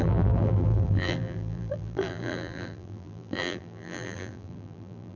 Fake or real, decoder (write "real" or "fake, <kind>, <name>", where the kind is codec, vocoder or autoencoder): fake, vocoder, BigVGAN v2